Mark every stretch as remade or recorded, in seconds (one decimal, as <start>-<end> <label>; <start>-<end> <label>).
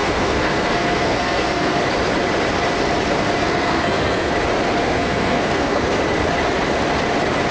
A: 0.0-1.8 remade; 1.8-3.4 recorded; 3.4-4.3 remade; 4.3-4.8 recorded; 4.8-6.0 remade; 6.0-7.5 recorded